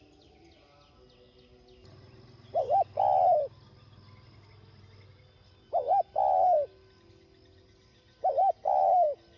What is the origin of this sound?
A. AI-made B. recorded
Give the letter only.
B